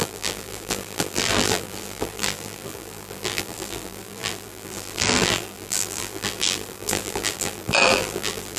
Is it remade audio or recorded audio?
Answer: remade